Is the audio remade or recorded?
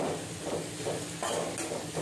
recorded